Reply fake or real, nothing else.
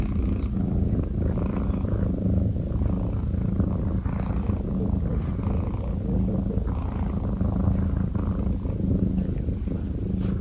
real